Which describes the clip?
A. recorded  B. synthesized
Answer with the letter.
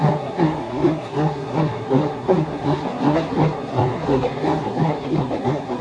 B